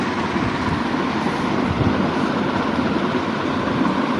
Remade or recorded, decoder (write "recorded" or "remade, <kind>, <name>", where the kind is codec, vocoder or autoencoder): recorded